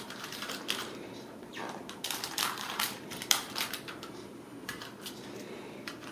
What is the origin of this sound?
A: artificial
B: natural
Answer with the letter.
A